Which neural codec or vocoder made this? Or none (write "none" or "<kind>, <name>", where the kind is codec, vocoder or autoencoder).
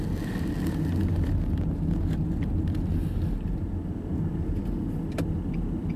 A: none